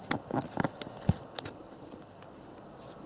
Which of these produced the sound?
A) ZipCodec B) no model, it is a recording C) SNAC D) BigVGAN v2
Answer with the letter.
B